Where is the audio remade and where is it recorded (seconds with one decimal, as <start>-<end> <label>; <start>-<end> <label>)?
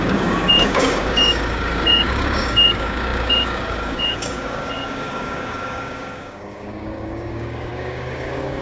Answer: 0.0-8.6 remade